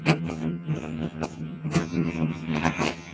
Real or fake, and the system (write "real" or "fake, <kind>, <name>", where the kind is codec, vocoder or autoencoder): fake, vocoder, HiFi-GAN